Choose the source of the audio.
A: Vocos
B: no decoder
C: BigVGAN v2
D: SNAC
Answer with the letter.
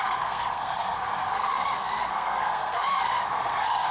D